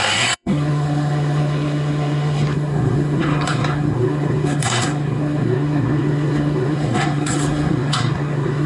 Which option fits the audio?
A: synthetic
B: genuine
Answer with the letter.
A